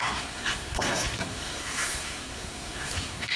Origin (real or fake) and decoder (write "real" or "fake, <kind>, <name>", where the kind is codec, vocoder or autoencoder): fake, codec, SNAC